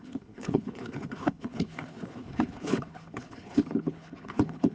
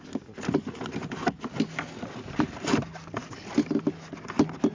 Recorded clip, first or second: second